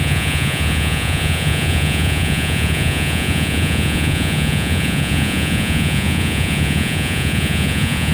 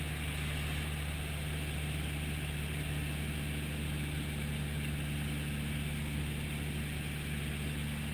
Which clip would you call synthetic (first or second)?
first